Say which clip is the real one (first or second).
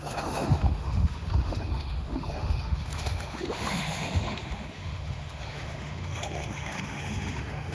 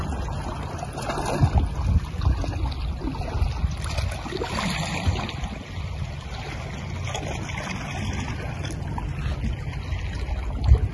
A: second